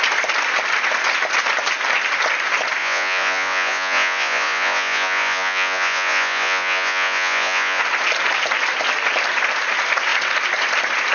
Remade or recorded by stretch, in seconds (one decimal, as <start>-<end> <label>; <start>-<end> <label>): 0.0-2.8 recorded; 2.8-7.8 remade; 7.8-11.1 recorded